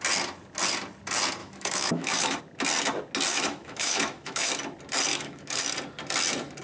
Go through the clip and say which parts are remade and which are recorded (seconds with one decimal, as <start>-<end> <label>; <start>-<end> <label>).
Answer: 0.0-1.4 recorded; 1.4-2.4 remade; 2.4-3.3 recorded; 3.3-4.5 remade; 4.5-5.1 recorded; 5.1-5.6 remade; 5.6-6.6 recorded